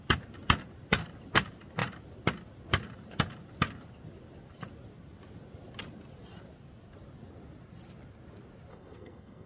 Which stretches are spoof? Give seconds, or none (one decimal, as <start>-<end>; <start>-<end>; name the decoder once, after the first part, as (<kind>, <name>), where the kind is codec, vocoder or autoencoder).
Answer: 8.7-9.5 (codec, SNAC)